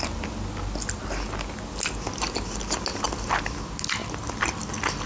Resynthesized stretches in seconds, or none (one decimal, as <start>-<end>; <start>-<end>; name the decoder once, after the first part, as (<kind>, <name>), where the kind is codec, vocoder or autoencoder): none

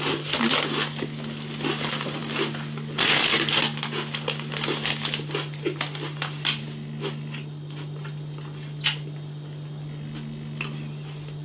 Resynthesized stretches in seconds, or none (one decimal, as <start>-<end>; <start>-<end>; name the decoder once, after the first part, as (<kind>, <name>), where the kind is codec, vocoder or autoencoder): none

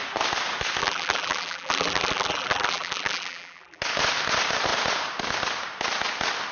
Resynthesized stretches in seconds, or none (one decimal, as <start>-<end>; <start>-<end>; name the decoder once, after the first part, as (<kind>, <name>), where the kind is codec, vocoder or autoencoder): 0.8-3.8 (vocoder, BigVGAN v2)

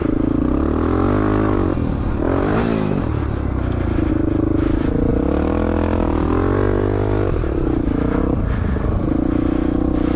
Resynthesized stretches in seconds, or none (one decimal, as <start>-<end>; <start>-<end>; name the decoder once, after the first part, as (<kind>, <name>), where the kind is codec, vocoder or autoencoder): none

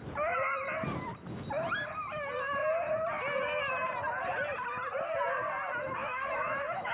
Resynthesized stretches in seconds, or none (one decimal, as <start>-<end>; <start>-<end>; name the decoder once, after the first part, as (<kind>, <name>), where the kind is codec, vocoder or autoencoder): 6.0-6.9 (autoencoder, DAC-VAE)